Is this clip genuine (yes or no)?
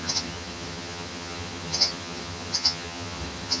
no